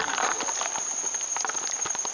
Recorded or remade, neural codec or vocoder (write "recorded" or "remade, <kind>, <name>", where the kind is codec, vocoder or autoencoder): recorded